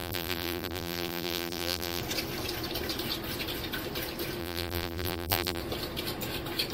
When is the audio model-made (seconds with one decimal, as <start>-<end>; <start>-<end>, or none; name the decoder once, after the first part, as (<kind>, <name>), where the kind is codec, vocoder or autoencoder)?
0.0-2.0 (vocoder, BigVGAN v2); 4.4-5.6